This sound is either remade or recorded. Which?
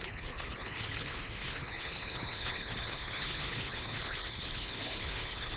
remade